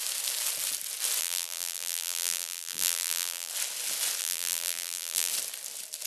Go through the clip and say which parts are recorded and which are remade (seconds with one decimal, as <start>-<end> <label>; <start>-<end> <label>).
0.0-1.2 recorded; 1.2-3.5 remade; 3.5-4.2 recorded; 4.2-5.3 remade; 5.3-6.1 recorded